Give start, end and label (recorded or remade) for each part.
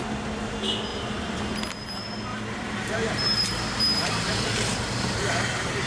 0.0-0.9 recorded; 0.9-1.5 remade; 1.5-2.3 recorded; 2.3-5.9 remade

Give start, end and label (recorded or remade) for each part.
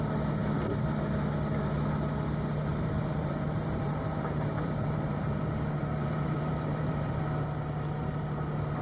0.0-2.7 recorded; 2.7-7.2 remade; 7.2-8.8 recorded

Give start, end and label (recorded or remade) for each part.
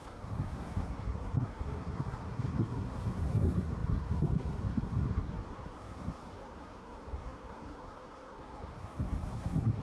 0.0-9.8 remade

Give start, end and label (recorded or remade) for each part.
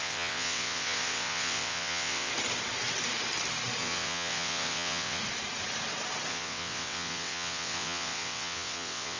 0.0-2.3 remade; 2.3-3.8 recorded; 3.8-5.2 remade; 5.2-6.3 recorded; 6.3-9.2 remade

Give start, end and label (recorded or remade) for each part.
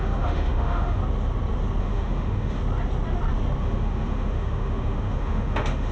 0.0-1.0 remade; 1.0-1.8 recorded; 1.8-2.6 remade; 2.6-3.6 recorded; 3.6-5.9 remade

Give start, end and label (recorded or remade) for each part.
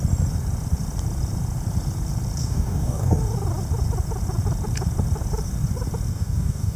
0.0-2.4 recorded; 2.4-3.2 remade; 3.2-6.1 recorded; 6.1-6.8 remade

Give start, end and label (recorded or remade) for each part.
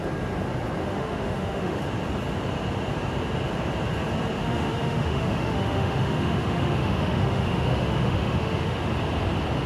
0.0-0.8 recorded; 0.8-1.8 remade; 1.8-4.4 recorded; 4.4-8.9 remade; 8.9-9.7 recorded